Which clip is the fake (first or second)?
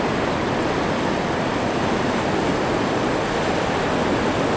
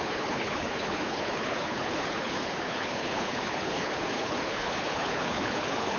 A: second